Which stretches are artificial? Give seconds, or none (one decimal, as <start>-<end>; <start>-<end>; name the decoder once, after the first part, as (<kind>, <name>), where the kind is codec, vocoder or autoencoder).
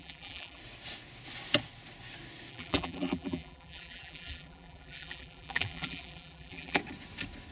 0.0-0.6 (vocoder, BigVGAN v2); 2.5-6.8